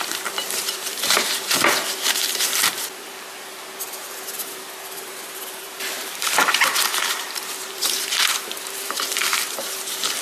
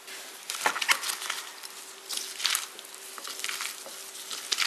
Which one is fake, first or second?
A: first